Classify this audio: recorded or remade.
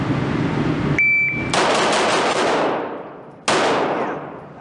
recorded